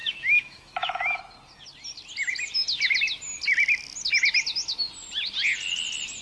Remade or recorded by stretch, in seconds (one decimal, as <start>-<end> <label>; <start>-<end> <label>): 0.0-1.2 remade; 1.2-6.2 recorded